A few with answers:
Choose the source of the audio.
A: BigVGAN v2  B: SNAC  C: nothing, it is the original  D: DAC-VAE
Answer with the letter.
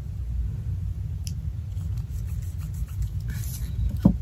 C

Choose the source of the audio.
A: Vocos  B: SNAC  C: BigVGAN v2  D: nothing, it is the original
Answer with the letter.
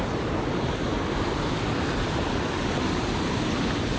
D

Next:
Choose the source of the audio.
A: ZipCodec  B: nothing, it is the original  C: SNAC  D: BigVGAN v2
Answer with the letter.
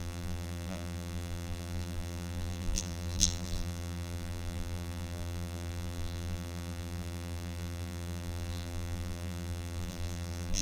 D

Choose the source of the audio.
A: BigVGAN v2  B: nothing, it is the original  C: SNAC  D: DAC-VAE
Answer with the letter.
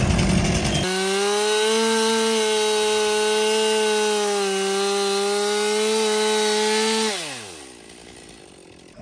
B